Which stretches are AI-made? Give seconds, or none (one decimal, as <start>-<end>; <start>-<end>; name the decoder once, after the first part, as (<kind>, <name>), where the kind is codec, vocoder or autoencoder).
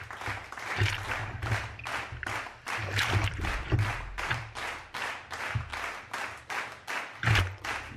0.0-1.2 (vocoder, BigVGAN v2); 2.8-5.7; 6.4-8.0